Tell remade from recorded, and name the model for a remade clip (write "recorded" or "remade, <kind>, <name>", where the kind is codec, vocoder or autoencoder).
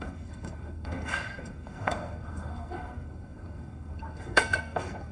remade, codec, SNAC